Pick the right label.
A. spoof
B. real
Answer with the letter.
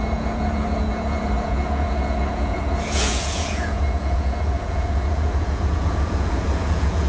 A